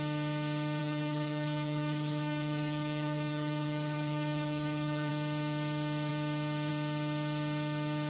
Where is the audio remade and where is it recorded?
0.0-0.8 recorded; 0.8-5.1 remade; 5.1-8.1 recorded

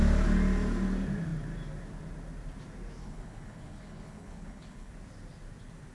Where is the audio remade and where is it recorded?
0.0-3.0 recorded; 3.0-4.9 remade; 4.9-5.9 recorded

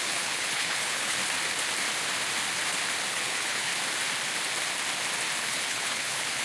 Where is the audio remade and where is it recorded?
0.0-1.2 remade; 1.2-3.1 recorded; 3.1-3.7 remade; 3.7-5.4 recorded; 5.4-6.4 remade

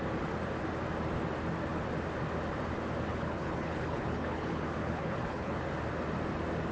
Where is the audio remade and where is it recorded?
0.0-3.1 recorded; 3.1-5.6 remade; 5.6-6.7 recorded